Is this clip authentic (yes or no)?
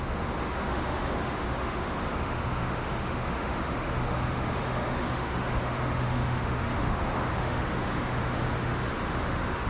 no